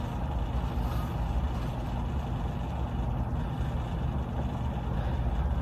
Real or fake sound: real